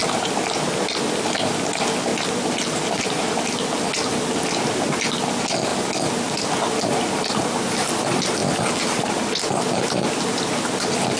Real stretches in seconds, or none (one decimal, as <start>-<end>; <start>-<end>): 0.0-11.2